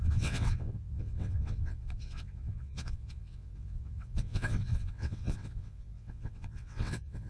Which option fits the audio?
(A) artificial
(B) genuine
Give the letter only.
A